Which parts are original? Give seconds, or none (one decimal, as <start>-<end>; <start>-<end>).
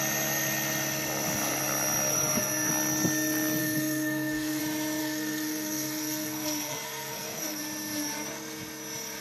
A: 0.0-2.1; 2.7-3.6; 4.6-5.0; 7.6-9.2